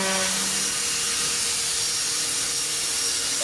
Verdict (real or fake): real